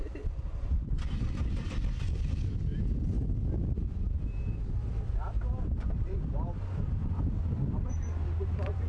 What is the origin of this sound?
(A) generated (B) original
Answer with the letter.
A